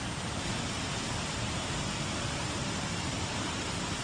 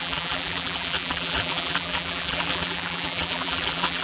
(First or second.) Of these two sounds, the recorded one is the first